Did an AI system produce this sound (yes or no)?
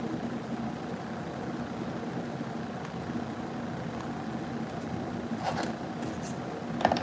no